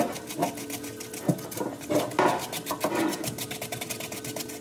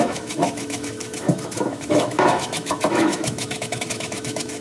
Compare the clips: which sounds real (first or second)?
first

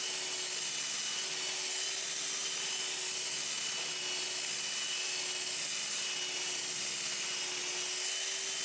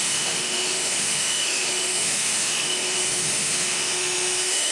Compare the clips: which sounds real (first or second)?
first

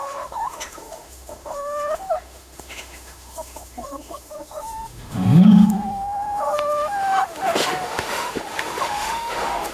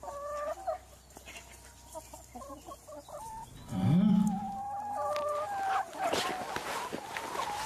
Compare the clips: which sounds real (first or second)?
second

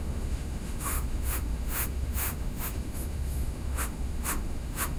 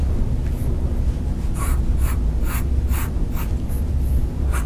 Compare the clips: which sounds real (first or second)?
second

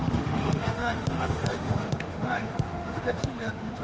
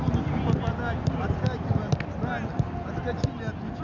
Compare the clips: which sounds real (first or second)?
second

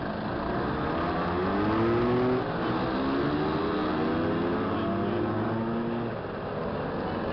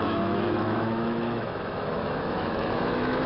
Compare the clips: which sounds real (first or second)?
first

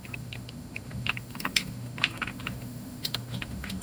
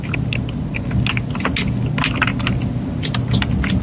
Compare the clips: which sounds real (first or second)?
second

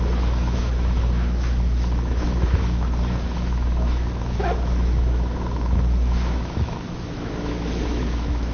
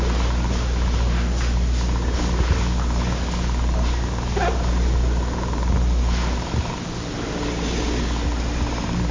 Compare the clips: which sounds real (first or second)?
second